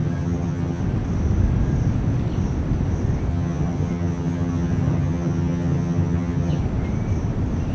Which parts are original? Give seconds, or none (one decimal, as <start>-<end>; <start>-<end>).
0.8-3.3; 6.6-7.7